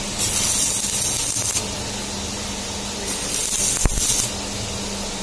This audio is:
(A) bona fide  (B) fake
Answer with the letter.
A